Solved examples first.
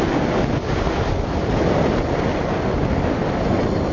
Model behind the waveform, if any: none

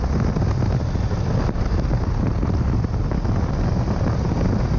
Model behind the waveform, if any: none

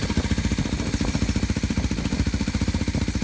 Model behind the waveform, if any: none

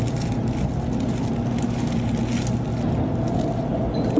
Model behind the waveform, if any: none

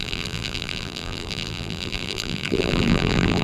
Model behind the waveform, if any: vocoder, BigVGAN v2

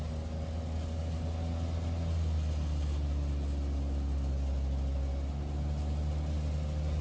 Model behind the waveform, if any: none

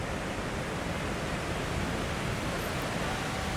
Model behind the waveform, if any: none